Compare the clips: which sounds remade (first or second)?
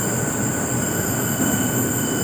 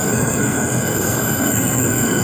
second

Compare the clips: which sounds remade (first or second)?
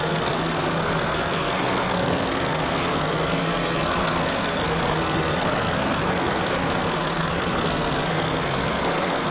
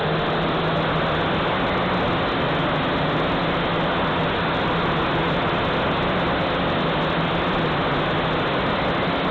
first